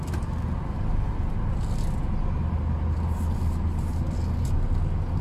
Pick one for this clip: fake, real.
real